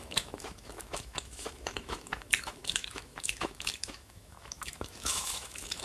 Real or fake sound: fake